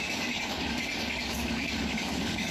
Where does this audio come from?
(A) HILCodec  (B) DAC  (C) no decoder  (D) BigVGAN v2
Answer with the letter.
B